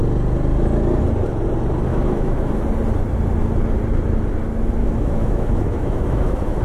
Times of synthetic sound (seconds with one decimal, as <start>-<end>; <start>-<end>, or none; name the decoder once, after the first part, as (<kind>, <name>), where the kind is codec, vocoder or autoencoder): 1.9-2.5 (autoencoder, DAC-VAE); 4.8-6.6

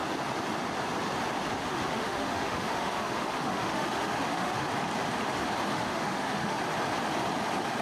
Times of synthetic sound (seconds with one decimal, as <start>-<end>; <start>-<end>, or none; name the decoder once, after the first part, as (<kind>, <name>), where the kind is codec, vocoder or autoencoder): 1.6-4.7 (autoencoder, DAC-VAE); 5.7-6.6

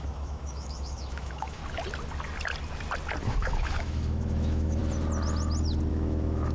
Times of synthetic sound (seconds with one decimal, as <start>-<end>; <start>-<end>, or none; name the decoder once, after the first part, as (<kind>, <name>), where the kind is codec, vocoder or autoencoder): 0.0-1.6 (autoencoder, DAC-VAE); 3.2-4.8; 5.9-6.5

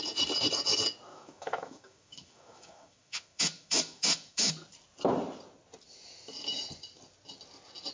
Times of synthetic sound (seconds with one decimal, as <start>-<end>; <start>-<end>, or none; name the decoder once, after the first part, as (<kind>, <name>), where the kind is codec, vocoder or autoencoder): 1.1-4.5 (autoencoder, DAC-VAE)